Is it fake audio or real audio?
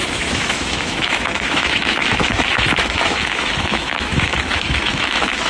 fake